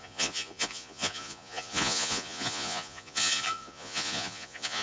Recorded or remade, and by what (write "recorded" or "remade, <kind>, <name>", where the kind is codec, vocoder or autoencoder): remade, vocoder, Vocos